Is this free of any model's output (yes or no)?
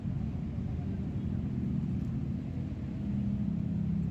yes